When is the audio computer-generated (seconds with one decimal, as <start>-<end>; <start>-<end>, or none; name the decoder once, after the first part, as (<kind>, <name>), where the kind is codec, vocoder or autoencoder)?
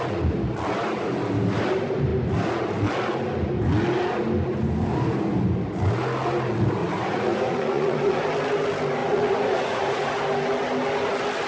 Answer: 6.8-8.2 (vocoder, Vocos); 9.0-10.1